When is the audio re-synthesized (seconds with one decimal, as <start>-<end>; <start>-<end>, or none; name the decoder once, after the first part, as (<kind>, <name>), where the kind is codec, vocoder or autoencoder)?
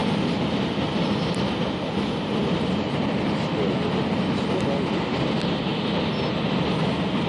2.4-3.2 (vocoder, BigVGAN v2)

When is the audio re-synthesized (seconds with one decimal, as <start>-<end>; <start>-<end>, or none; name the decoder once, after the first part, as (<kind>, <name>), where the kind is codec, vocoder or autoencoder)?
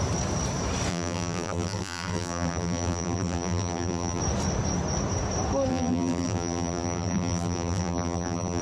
0.9-4.2 (vocoder, BigVGAN v2); 5.7-8.6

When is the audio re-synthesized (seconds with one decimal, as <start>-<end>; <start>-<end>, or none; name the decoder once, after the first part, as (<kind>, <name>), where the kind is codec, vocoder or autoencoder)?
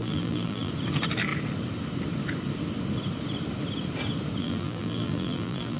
0.0-0.7 (vocoder, BigVGAN v2); 4.4-5.8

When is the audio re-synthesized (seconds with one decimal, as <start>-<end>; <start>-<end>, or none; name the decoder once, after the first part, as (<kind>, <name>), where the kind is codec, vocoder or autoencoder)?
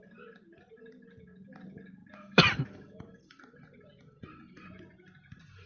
2.0-5.7 (vocoder, BigVGAN v2)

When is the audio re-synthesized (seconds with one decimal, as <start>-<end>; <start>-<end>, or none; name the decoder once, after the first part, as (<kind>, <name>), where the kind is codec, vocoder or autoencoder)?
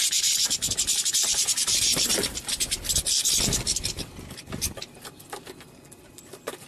0.0-2.1 (vocoder, BigVGAN v2); 6.1-6.7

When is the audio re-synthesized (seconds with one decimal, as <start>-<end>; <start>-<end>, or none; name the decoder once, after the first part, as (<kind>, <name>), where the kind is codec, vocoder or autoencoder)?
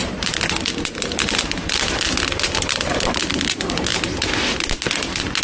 0.0-2.9 (vocoder, BigVGAN v2)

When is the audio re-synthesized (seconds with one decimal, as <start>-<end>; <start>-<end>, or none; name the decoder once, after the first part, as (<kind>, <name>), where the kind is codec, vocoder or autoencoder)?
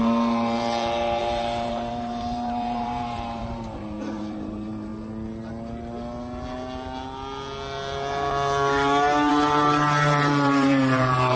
0.0-4.9 (vocoder, BigVGAN v2); 9.3-11.4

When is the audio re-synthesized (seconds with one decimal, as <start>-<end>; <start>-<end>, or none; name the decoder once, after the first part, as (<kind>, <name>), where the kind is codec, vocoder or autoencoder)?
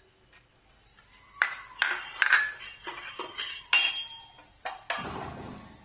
0.9-3.9 (vocoder, BigVGAN v2)